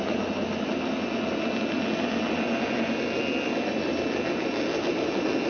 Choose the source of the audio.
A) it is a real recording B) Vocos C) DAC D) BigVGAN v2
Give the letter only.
A